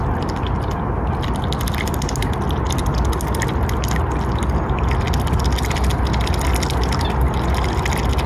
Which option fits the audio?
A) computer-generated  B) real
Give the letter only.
B